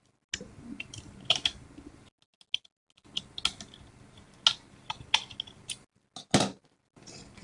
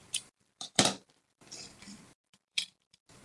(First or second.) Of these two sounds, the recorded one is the first